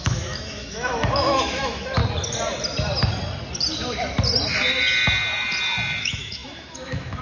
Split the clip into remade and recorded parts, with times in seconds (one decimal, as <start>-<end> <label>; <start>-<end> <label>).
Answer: 0.0-2.0 remade; 2.0-6.0 recorded; 6.0-7.2 remade